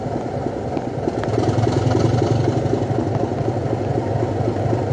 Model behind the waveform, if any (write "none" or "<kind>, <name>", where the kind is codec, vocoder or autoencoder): none